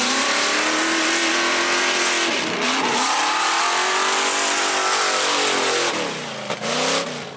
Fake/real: real